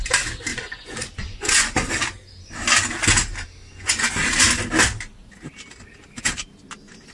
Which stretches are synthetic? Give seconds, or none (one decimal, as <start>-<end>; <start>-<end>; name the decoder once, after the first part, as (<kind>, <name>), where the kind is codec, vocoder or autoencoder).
0.5-1.9 (vocoder, Vocos); 3.6-4.1